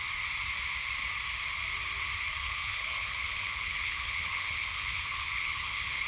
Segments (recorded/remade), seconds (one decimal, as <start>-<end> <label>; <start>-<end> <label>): 0.0-2.4 recorded; 2.4-6.1 remade